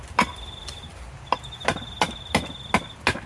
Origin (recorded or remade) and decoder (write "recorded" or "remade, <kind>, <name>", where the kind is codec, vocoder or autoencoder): recorded